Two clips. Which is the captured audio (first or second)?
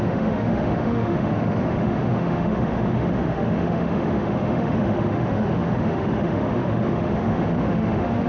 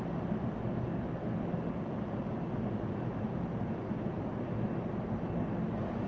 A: second